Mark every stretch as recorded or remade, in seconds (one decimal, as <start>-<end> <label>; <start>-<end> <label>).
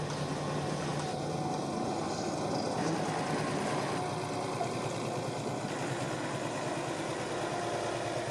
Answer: 0.0-8.3 recorded